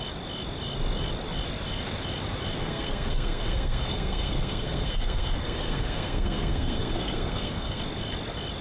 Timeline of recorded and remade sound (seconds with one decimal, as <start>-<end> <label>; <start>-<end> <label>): 0.0-2.6 recorded; 2.6-7.8 remade; 7.8-8.6 recorded